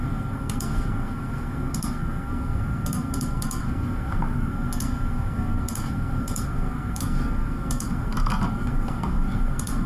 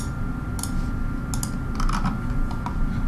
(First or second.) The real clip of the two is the second